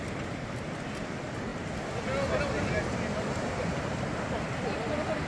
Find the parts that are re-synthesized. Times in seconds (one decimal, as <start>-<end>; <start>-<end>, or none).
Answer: none